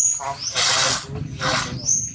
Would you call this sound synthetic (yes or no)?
no